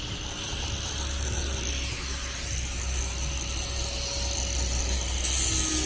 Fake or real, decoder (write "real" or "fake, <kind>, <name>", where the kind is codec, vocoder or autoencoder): real